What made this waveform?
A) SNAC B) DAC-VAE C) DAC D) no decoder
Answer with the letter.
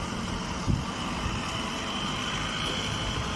D